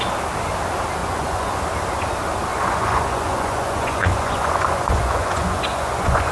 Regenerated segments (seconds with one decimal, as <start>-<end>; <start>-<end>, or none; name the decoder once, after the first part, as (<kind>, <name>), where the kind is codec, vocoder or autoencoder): 1.0-1.6 (vocoder, Vocos); 2.5-6.3